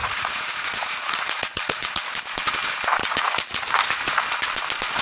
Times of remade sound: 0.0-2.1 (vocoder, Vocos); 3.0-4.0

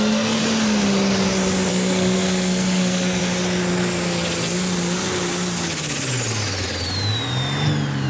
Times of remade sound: 0.0-0.4 (codec, SNAC); 1.7-3.2